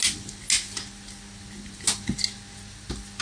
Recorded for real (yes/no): yes